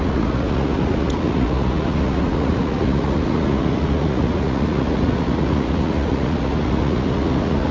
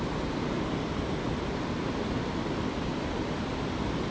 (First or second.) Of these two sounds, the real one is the second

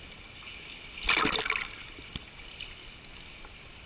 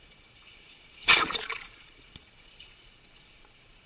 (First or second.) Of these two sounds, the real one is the first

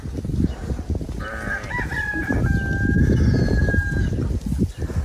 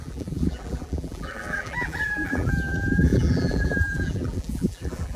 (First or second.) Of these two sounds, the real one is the first